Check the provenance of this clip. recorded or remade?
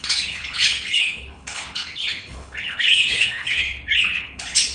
remade